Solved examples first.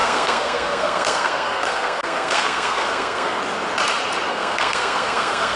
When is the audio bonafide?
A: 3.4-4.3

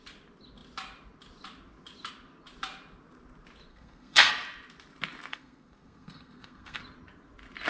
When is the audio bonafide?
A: 0.0-3.7; 4.3-5.3; 6.8-7.7

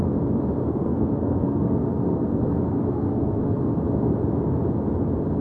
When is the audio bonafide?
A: 0.0-0.6; 3.8-5.4

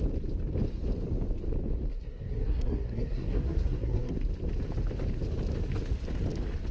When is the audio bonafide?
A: 0.0-1.9; 4.1-6.7

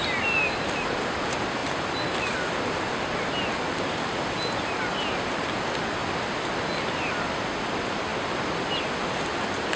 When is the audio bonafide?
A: 0.0-9.8

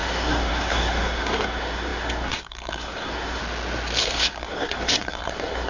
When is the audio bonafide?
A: 3.4-4.0